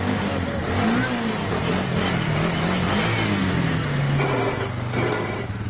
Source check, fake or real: real